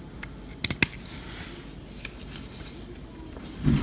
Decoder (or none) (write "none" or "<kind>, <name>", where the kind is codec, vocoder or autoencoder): none